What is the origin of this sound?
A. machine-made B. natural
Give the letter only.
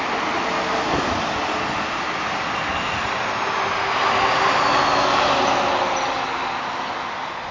B